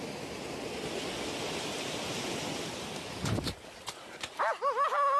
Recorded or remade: recorded